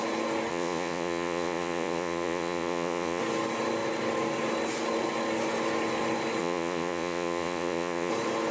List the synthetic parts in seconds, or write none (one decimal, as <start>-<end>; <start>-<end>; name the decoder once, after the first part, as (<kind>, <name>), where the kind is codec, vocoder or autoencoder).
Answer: 0.5-3.2 (vocoder, Vocos); 6.4-8.1